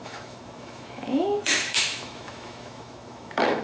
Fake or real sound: fake